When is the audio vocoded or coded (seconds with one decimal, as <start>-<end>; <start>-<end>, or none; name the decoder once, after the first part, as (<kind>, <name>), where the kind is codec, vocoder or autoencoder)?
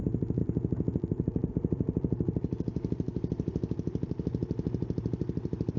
none